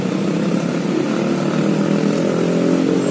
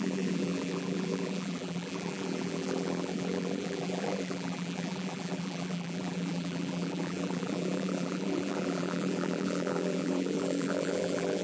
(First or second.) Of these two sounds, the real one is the first